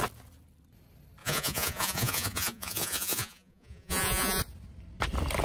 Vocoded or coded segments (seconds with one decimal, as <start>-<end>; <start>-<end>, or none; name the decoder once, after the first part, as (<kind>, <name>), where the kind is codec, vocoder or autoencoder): 1.2-4.4 (vocoder, Vocos)